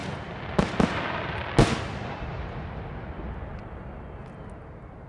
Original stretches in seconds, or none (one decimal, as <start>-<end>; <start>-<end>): 0.0-5.1